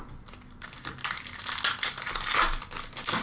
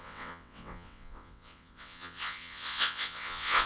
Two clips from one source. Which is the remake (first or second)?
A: second